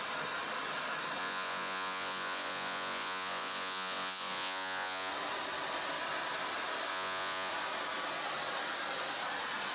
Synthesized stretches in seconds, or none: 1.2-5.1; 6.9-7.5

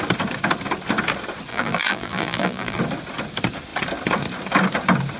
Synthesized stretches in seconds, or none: 1.5-2.8

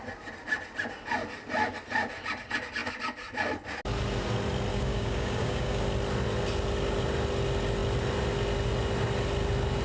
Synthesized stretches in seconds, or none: 4.7-5.8

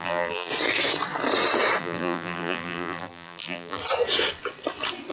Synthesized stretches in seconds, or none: 0.0-0.5; 1.8-3.8

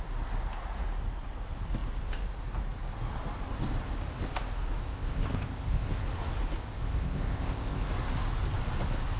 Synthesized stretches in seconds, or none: 4.8-6.0; 6.6-7.9

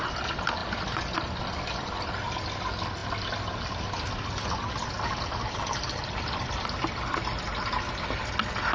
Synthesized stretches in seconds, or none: none

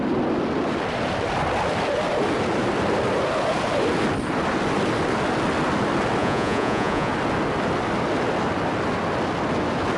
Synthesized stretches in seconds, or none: 6.2-7.1